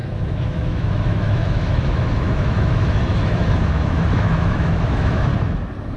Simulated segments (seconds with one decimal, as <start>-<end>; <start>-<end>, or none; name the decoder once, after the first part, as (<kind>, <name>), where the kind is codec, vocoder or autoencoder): 0.0-5.3 (autoencoder, DAC-VAE)